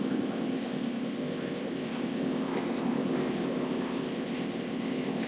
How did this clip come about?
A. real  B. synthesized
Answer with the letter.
B